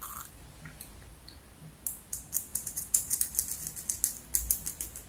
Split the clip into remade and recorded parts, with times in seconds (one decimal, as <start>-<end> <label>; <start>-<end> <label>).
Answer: 0.0-2.5 recorded; 2.5-3.2 remade; 3.2-5.1 recorded